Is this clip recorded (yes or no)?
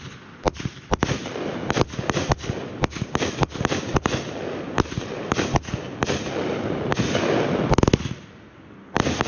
yes